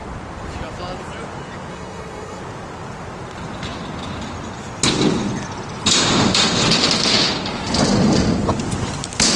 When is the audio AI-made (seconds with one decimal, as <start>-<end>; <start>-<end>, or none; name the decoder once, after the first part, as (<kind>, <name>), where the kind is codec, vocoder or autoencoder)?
1.7-2.4 (codec, SNAC)